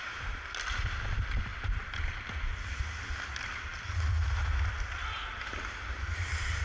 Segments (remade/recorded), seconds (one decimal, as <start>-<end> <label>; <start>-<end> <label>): 0.0-1.5 recorded; 1.5-2.5 remade; 2.5-6.6 recorded